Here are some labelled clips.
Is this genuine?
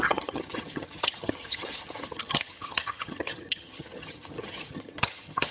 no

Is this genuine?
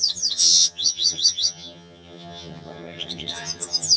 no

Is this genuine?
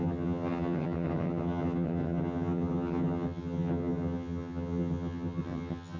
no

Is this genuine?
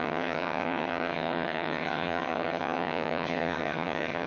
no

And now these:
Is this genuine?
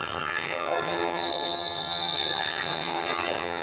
no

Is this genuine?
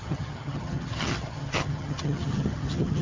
no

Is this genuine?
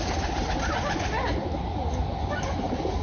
yes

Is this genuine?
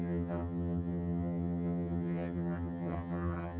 no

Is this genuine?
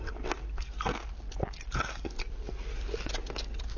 yes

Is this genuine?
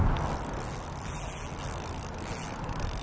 yes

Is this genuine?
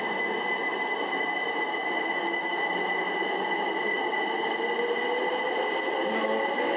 yes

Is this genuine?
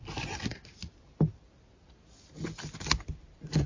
yes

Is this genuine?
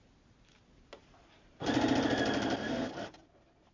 yes